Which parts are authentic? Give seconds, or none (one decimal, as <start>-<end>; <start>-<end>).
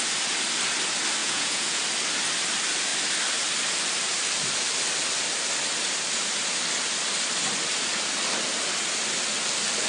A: 0.0-1.2; 1.8-9.9